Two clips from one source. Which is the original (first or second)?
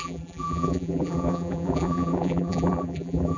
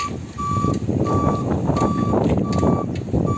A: second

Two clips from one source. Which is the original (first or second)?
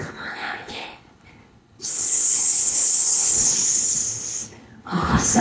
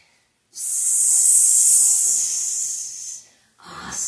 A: second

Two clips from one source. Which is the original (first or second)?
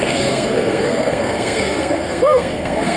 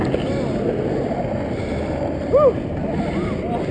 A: second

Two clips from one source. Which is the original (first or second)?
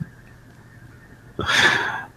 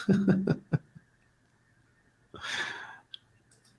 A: first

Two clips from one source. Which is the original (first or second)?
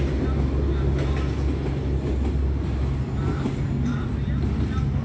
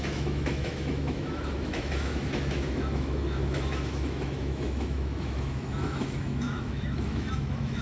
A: first